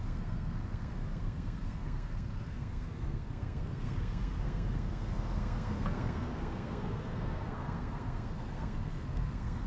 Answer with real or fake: fake